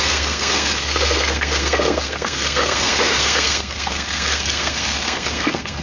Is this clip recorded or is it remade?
remade